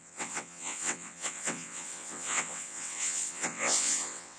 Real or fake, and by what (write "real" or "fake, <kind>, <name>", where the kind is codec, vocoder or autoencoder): fake, vocoder, WaveNeXt